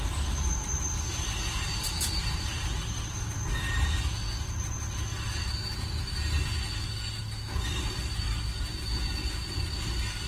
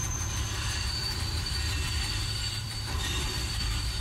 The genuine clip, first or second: first